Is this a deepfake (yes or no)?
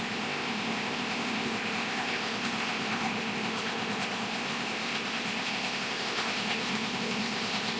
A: yes